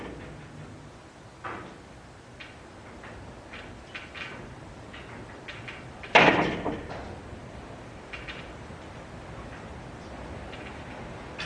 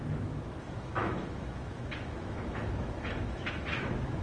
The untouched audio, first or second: first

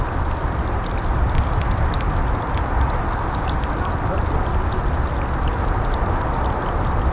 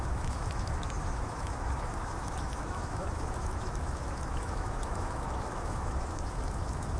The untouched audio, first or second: first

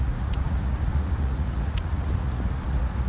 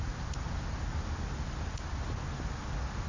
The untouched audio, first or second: second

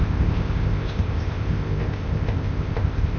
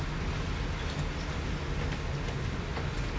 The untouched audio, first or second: second